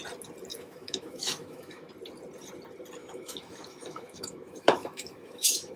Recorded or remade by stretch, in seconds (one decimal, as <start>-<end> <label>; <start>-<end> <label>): 0.0-0.5 recorded; 0.5-1.9 remade; 1.9-3.0 recorded; 3.0-5.8 remade